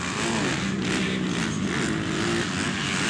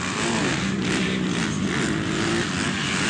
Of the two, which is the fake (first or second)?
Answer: second